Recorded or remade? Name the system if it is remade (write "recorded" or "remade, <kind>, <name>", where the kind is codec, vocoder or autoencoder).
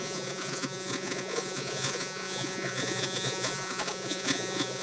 remade, vocoder, Vocos